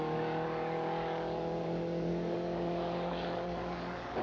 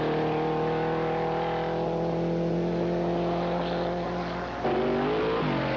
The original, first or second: second